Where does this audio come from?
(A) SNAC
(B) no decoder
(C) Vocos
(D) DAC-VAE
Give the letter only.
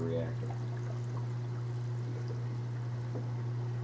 B